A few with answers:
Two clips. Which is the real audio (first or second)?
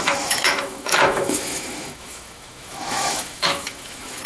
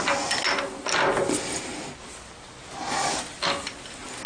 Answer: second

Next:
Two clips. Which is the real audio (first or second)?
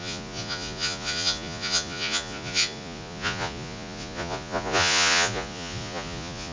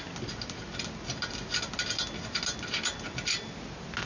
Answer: second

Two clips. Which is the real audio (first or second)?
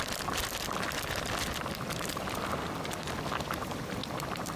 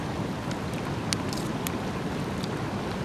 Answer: second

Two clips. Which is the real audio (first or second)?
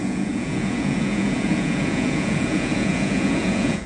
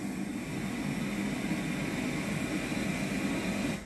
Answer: second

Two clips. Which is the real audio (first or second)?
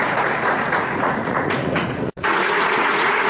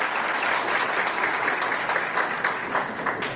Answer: second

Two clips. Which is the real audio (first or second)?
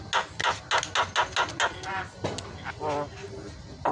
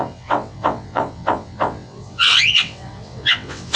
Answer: first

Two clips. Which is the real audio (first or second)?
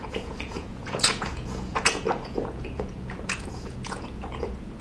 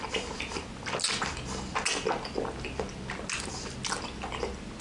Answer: second